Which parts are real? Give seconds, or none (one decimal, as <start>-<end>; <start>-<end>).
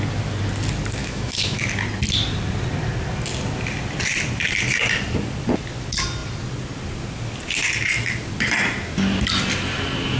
0.0-1.0; 1.7-10.2